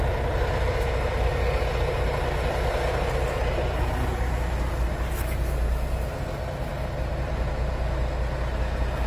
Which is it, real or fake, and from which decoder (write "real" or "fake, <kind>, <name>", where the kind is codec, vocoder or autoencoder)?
real